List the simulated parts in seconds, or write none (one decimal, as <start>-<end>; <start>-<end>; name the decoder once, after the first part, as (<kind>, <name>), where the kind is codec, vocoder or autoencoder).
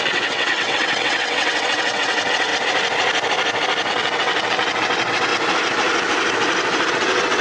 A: 0.0-2.5 (vocoder, WaveNeXt); 3.9-5.3; 6.9-7.4